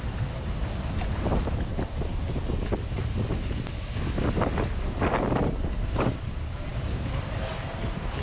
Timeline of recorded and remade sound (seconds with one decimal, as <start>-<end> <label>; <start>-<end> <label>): 0.0-1.7 remade; 1.7-5.9 recorded; 5.9-8.2 remade